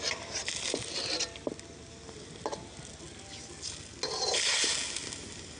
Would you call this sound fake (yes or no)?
no